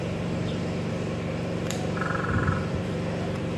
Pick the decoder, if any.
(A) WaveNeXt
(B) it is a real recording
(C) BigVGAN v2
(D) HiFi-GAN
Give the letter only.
C